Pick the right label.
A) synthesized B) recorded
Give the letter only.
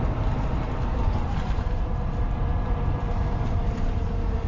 A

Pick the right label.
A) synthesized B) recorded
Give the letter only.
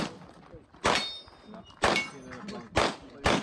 B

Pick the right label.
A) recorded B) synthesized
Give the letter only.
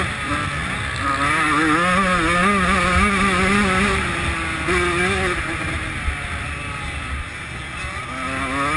A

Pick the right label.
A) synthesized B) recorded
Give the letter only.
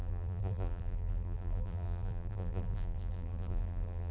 A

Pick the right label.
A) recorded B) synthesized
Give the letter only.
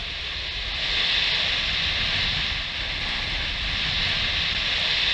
A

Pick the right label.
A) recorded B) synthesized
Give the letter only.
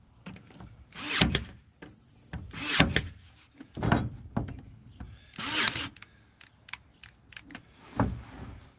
A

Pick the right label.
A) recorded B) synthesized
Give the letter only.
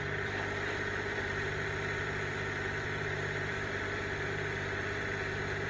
B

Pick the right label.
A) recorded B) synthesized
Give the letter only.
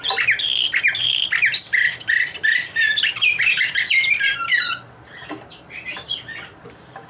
B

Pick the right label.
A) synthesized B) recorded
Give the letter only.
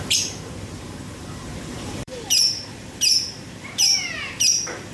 A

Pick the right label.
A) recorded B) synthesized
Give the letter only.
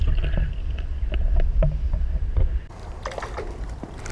B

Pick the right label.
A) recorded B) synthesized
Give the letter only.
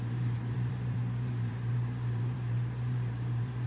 B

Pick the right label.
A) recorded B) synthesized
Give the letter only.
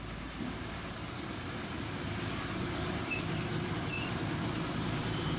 B